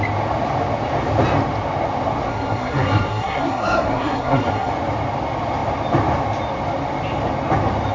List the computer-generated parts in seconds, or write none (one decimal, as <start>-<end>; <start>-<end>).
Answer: 2.3-4.7